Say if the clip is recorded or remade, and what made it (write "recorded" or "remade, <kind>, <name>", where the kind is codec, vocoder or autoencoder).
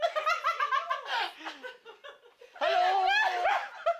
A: recorded